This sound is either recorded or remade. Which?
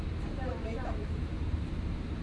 remade